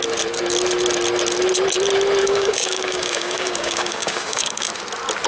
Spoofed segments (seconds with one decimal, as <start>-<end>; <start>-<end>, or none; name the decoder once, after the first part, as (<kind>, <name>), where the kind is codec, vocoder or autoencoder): 2.2-4.7 (codec, DAC)